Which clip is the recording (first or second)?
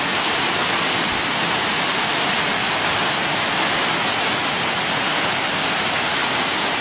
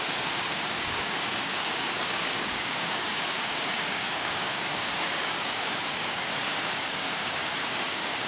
first